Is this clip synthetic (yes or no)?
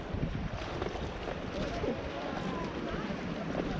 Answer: yes